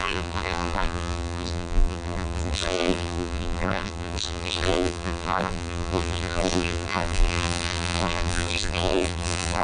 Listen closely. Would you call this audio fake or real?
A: fake